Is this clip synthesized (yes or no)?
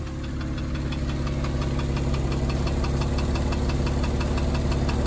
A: no